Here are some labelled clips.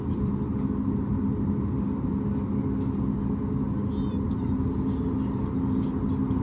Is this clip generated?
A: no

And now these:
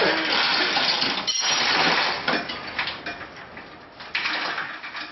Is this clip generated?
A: no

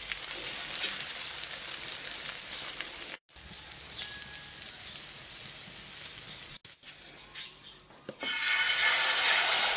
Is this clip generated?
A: no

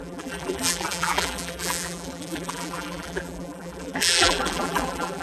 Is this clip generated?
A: yes